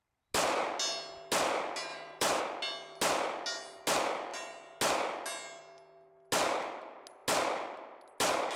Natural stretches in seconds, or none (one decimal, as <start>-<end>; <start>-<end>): 0.0-1.9; 2.4-8.6